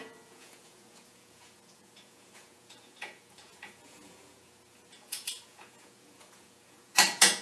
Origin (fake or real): fake